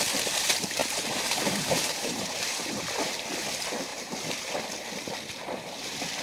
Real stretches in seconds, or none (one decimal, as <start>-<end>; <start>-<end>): 0.0-0.8; 3.1-3.9; 4.5-6.2